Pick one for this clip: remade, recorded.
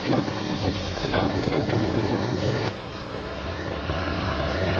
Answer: remade